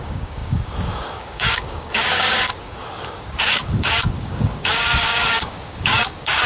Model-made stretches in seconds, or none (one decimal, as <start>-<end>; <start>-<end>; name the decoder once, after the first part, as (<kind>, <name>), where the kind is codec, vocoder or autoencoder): 0.0-6.5 (codec, DAC)